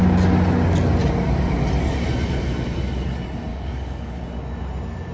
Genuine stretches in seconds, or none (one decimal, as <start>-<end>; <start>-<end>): 0.0-3.5; 4.2-5.1